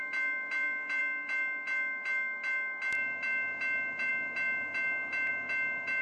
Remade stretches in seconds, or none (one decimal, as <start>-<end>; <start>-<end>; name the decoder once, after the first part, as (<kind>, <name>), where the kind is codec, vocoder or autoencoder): none